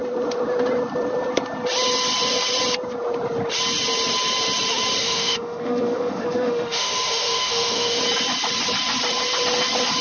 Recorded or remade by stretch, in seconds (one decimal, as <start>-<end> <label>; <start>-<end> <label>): 0.0-5.0 recorded; 5.0-8.0 remade; 8.0-10.0 recorded